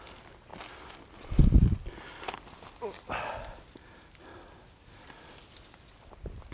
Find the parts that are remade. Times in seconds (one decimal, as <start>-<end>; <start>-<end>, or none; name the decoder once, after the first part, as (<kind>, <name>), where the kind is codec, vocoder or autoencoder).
none